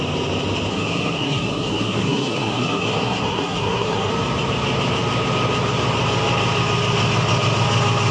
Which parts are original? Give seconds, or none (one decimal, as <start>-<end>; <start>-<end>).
0.0-0.7; 4.1-8.1